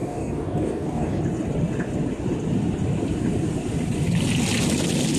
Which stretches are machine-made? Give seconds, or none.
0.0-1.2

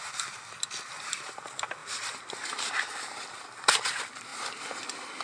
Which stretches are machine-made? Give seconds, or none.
none